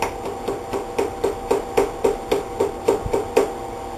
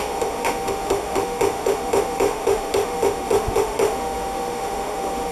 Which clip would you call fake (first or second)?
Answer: second